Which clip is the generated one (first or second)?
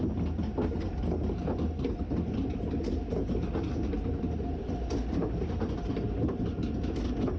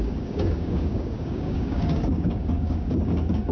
second